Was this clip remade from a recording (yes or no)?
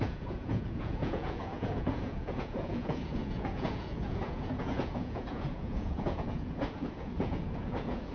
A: yes